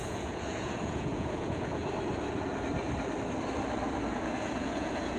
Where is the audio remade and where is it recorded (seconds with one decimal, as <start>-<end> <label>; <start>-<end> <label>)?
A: 0.0-1.8 remade; 1.8-4.1 recorded; 4.1-5.2 remade